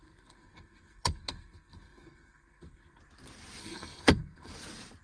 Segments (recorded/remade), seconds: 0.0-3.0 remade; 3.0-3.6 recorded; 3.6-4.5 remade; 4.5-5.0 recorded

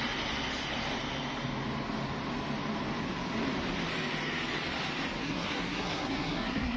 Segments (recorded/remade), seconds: 0.0-5.2 recorded; 5.2-6.8 remade

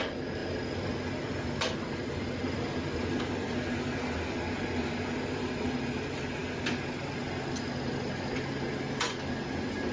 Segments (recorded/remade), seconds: 0.0-9.9 recorded

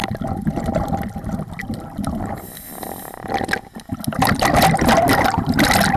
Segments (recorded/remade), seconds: 0.0-6.0 recorded